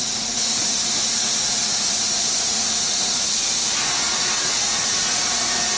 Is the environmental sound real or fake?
fake